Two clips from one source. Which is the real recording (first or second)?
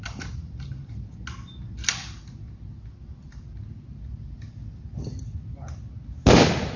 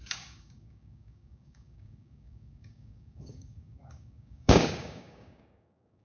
first